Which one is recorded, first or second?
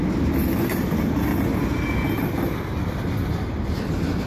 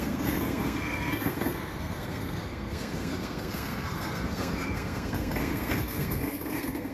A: first